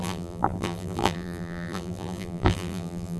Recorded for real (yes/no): no